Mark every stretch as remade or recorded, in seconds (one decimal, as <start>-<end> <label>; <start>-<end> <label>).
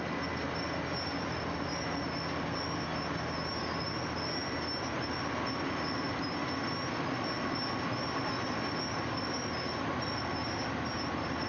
0.0-11.5 recorded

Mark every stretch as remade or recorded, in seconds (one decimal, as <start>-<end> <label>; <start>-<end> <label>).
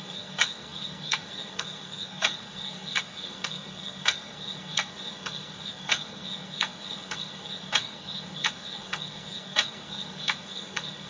0.0-11.1 remade